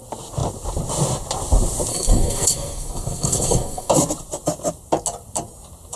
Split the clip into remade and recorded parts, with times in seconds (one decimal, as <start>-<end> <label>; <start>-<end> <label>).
0.0-1.9 recorded; 1.9-3.9 remade; 3.9-6.0 recorded